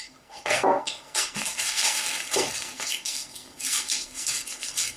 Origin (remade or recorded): remade